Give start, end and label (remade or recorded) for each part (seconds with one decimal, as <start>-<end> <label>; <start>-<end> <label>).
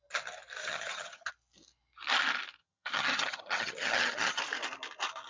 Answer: 0.0-0.6 recorded; 0.6-1.3 remade; 1.3-2.6 recorded; 2.6-4.4 remade; 4.4-5.3 recorded